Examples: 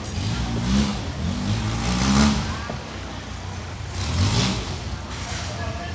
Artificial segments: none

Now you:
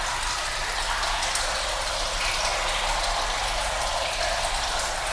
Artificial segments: none

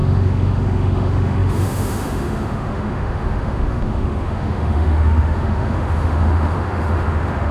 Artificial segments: 0.0-7.5 (autoencoder, DAC-VAE)